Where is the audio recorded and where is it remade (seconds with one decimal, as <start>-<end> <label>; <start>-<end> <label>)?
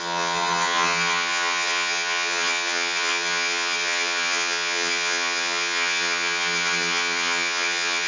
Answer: 0.0-8.1 remade